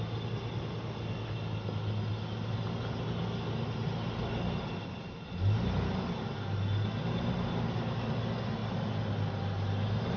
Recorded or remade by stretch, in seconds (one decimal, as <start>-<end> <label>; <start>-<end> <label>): 0.0-10.2 recorded